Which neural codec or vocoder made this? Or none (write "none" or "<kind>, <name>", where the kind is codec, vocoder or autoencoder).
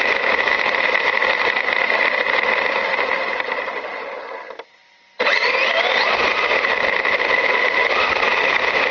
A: none